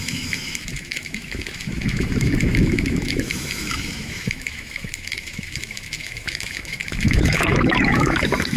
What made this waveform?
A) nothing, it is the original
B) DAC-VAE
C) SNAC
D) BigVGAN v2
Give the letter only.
B